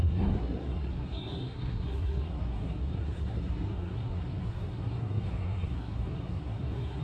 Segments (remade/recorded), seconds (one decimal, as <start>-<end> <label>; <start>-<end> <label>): 0.0-7.0 remade